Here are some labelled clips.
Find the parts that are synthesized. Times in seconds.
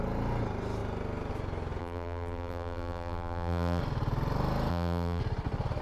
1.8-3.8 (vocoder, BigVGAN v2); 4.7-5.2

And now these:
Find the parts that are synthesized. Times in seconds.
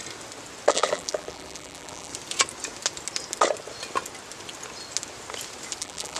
0.7-2.1 (vocoder, BigVGAN v2); 5.8-6.2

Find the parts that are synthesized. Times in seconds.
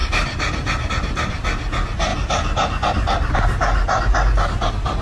none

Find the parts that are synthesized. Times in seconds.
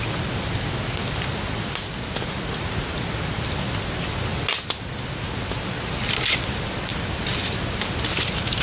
none